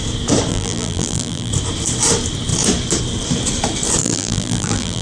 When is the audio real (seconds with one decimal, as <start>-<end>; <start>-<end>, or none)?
0.0-0.5; 1.5-4.0